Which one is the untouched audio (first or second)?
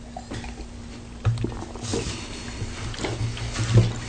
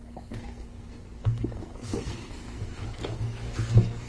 first